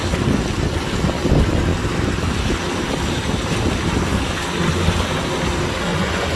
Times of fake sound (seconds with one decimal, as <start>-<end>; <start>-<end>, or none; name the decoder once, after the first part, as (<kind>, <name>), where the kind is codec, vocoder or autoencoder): 5.9-6.4 (vocoder, Vocos)